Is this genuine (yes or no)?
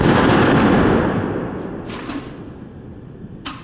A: yes